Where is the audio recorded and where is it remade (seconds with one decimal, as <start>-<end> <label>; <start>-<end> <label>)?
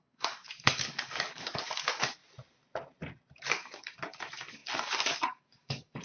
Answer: 0.0-2.2 remade; 2.2-3.4 recorded; 3.4-6.0 remade